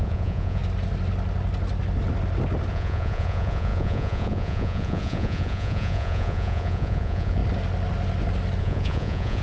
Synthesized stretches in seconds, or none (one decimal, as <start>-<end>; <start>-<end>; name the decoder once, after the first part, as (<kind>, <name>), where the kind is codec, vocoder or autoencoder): 0.0-0.6 (vocoder, Vocos); 2.7-7.4; 8.6-9.4